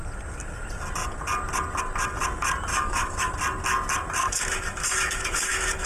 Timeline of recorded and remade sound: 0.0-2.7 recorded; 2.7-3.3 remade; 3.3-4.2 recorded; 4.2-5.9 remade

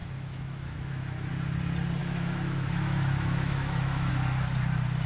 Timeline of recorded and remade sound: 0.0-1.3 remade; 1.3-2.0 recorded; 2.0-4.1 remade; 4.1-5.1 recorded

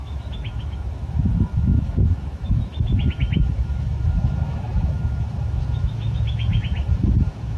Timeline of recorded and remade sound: 0.0-7.6 remade